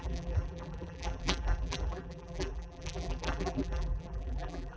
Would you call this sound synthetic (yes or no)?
yes